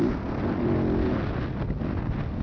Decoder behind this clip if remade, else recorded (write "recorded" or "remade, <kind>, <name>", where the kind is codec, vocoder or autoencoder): recorded